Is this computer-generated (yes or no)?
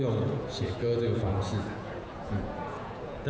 yes